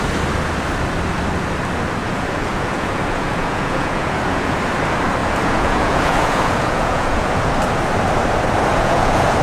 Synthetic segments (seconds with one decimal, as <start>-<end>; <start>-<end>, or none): 2.0-4.6; 5.2-7.5; 8.7-9.4